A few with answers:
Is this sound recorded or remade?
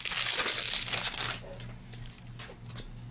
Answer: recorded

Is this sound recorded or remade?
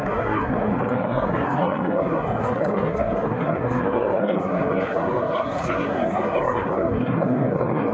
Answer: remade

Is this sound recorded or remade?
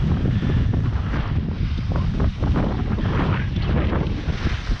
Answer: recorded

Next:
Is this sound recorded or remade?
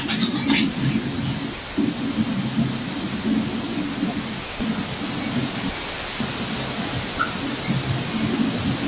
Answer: recorded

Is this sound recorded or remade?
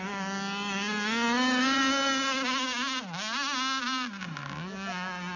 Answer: recorded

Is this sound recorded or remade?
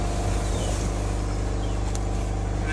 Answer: recorded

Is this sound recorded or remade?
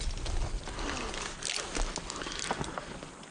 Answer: recorded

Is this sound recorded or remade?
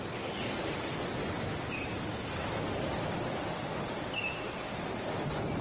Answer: recorded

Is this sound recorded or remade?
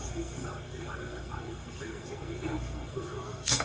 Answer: remade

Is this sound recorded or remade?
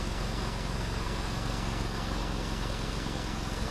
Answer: remade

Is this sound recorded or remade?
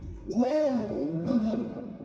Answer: remade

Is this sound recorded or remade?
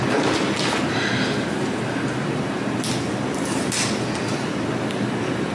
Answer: recorded